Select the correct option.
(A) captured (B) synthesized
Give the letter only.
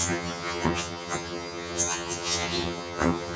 B